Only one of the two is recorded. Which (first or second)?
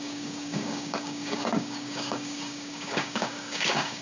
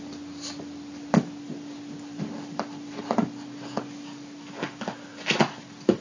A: second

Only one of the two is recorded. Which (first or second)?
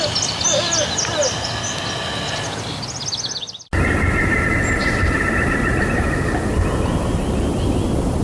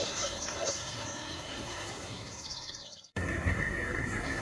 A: first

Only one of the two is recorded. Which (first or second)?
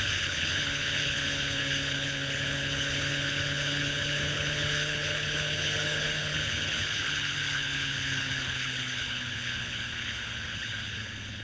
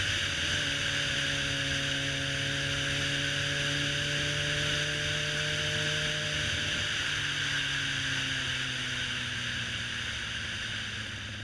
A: second